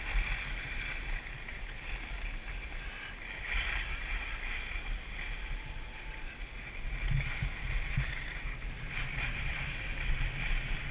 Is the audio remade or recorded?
recorded